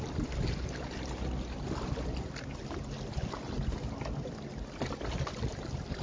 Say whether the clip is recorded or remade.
recorded